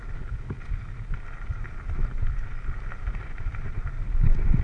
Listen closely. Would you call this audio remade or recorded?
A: recorded